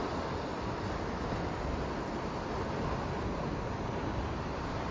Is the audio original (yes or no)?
yes